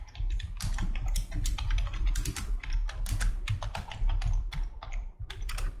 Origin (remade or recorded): remade